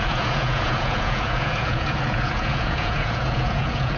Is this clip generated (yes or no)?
yes